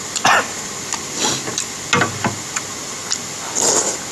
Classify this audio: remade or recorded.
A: recorded